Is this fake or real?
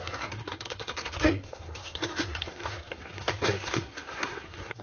fake